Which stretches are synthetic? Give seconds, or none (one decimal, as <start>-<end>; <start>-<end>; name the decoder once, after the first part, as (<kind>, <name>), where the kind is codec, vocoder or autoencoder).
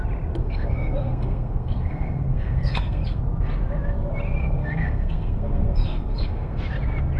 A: 0.4-3.2 (codec, SNAC); 4.4-6.6